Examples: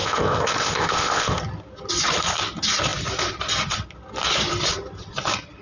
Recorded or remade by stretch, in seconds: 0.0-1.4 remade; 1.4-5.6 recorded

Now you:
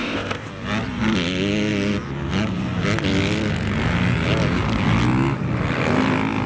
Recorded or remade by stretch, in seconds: 0.0-0.5 remade; 0.5-6.5 recorded